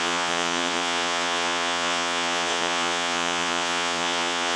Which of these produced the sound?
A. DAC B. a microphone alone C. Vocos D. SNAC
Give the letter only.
C